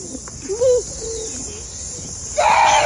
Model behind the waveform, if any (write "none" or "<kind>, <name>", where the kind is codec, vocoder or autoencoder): none